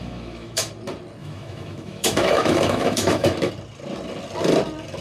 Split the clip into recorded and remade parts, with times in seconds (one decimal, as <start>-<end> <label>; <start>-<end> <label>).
0.0-0.7 remade; 0.7-1.2 recorded; 1.2-3.5 remade; 3.5-5.0 recorded